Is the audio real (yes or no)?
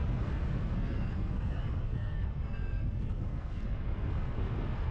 no